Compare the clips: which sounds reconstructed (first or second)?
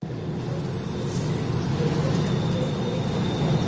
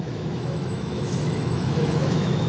second